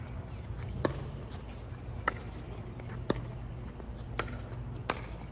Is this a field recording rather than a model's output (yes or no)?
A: yes